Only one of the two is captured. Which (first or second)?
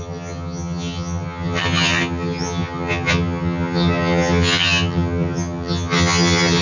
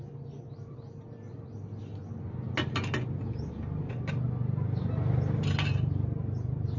second